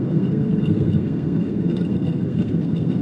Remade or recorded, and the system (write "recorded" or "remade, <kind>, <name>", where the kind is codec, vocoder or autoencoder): remade, codec, SNAC